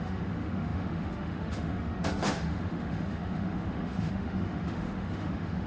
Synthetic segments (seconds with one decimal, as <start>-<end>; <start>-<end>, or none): 0.0-5.7